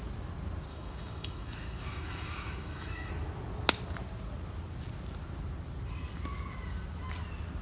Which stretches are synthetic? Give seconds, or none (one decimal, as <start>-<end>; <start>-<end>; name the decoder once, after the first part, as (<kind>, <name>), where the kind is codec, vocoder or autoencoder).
0.7-3.1 (autoencoder, DAC-VAE)